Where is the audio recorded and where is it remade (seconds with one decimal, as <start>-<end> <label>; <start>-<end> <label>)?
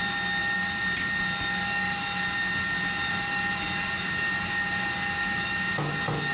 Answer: 0.0-6.3 recorded